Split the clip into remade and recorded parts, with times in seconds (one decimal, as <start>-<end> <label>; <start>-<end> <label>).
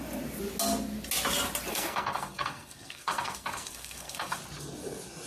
0.0-1.7 recorded; 1.7-4.4 remade; 4.4-5.3 recorded